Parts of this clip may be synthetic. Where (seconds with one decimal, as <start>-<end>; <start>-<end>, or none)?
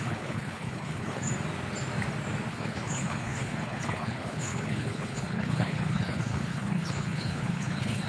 0.0-1.3; 2.5-8.1